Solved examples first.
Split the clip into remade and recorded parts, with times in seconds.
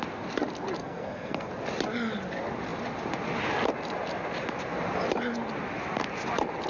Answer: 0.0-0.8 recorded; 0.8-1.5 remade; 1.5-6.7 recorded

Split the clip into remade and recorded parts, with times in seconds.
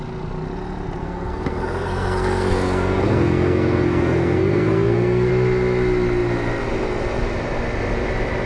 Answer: 0.0-1.0 recorded; 1.0-5.3 remade; 5.3-8.5 recorded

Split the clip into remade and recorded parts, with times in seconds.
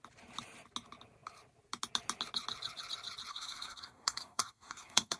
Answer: 0.0-3.3 recorded; 3.3-5.2 remade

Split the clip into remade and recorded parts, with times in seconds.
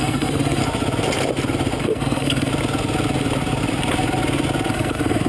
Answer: 0.0-0.6 remade; 0.6-1.8 recorded; 1.8-2.5 remade; 2.5-4.7 recorded; 4.7-5.3 remade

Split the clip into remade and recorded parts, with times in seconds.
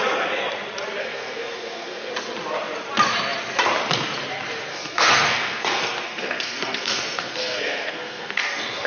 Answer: 0.0-1.0 recorded; 1.0-2.1 remade; 2.1-4.7 recorded; 4.7-8.9 remade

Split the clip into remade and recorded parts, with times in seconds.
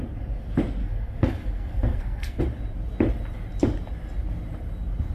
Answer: 0.0-0.8 recorded; 0.8-2.4 remade; 2.4-5.1 recorded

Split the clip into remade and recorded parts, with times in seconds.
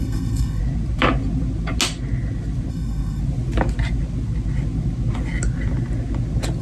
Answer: 0.0-0.6 remade; 0.6-2.7 recorded; 2.7-3.2 remade; 3.2-6.6 recorded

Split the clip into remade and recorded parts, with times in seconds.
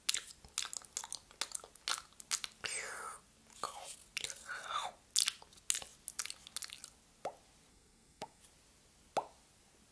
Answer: 0.0-7.7 recorded; 7.7-8.4 remade; 8.4-9.9 recorded